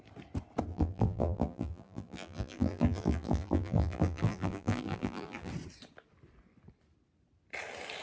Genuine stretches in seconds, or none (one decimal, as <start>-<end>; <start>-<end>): 0.0-0.7; 5.5-8.0